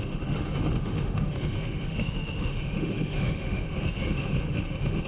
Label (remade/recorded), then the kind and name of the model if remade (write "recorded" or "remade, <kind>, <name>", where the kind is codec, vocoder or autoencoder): remade, autoencoder, DAC-VAE